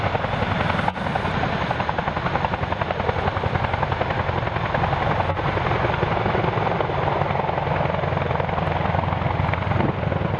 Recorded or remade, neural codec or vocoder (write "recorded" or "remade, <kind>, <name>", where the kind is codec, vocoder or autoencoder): recorded